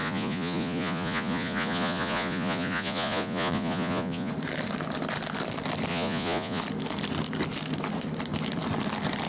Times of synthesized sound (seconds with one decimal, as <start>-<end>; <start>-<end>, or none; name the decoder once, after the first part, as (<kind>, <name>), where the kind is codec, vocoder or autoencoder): 0.0-4.3 (vocoder, Vocos); 5.9-6.6